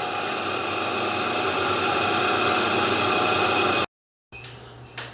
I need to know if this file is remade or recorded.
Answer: recorded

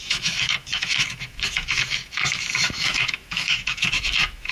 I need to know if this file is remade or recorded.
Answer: remade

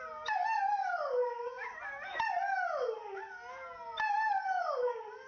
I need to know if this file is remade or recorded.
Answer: recorded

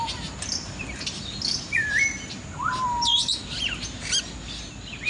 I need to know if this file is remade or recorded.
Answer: recorded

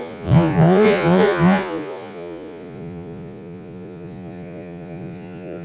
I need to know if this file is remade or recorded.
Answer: remade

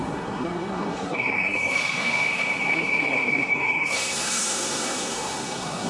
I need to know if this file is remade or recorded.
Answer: remade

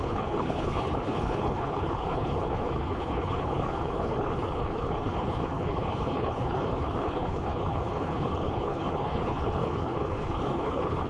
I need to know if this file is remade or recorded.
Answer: remade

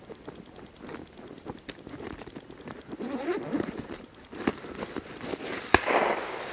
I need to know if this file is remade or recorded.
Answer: recorded